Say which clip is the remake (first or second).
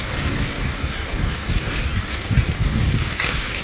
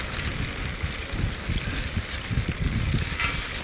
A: first